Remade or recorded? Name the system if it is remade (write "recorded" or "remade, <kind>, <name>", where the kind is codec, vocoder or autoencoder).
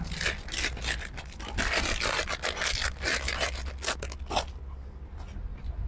recorded